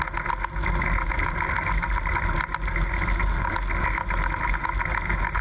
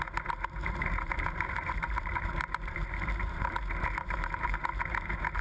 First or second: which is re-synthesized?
second